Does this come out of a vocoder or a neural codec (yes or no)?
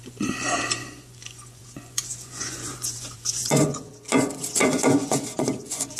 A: yes